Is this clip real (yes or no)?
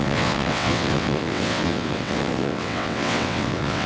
no